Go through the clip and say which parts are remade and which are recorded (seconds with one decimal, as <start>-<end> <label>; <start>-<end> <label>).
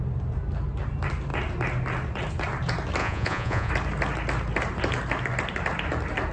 0.0-3.0 recorded; 3.0-3.7 remade; 3.7-6.3 recorded